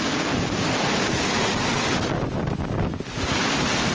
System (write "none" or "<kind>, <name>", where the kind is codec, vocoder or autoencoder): none